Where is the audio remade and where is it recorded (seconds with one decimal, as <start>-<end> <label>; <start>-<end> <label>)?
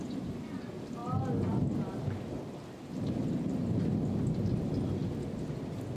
0.0-6.0 recorded